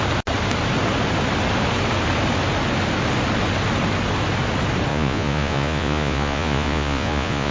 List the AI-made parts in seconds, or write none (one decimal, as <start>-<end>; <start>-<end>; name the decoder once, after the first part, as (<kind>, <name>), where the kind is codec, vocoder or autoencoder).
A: 4.9-7.5 (vocoder, Vocos)